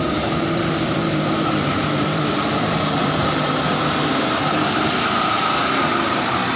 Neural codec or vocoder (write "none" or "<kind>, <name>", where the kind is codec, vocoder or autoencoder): vocoder, BigVGAN v2